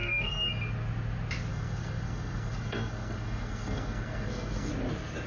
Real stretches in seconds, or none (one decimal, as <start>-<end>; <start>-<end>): 0.5-1.5; 4.7-5.3